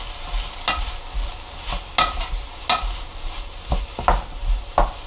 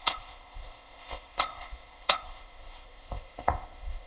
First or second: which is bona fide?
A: first